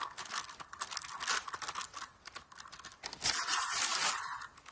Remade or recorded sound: recorded